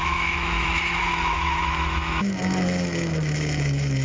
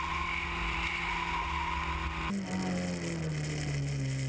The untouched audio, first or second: second